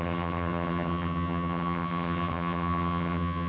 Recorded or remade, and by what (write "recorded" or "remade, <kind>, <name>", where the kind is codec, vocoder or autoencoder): remade, vocoder, HiFi-GAN